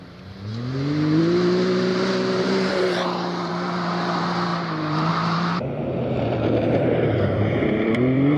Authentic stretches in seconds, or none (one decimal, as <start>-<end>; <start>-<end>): 0.5-1.2

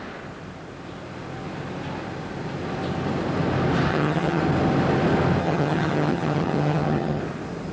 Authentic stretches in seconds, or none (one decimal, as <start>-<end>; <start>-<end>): 0.0-3.9; 4.4-5.4; 7.2-7.7

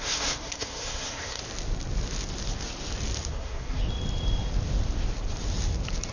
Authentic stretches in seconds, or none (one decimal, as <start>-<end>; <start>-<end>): 1.4-3.3; 3.8-6.1

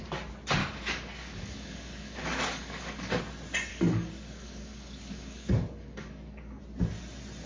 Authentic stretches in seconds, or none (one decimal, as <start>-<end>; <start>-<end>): 0.0-0.6; 3.2-3.7; 6.6-7.5

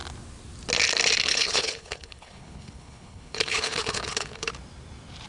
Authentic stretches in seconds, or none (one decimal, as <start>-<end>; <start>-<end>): 0.0-1.3; 4.5-5.3